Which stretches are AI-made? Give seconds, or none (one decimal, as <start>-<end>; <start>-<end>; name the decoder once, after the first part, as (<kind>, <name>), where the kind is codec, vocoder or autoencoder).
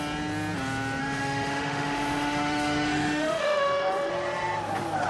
1.0-4.1 (autoencoder, DAC-VAE)